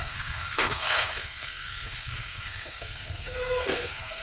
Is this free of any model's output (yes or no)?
no